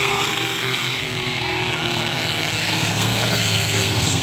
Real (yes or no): no